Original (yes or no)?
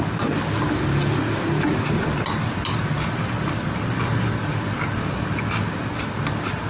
yes